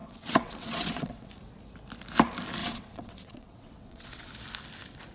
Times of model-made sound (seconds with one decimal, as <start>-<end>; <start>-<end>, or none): 0.0-1.3; 2.6-4.3